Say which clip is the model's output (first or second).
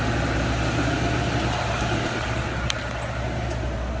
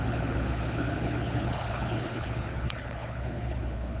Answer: second